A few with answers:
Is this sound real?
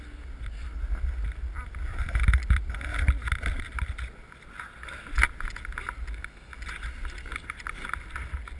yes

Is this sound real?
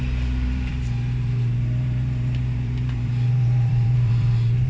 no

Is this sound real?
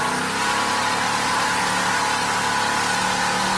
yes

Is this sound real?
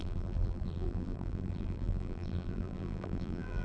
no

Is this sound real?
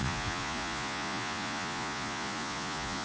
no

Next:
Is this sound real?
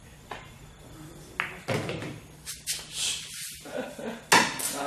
yes